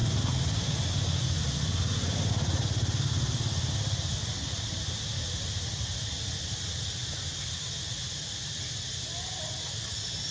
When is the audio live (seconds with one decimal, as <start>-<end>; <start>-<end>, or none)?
0.0-10.3